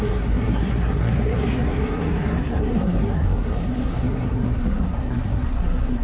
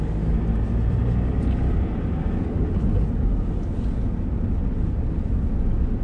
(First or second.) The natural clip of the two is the second